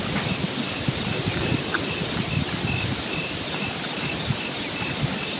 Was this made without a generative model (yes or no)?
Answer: yes